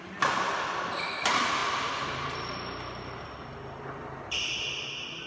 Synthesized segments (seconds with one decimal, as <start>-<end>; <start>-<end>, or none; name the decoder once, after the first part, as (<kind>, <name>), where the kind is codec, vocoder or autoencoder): none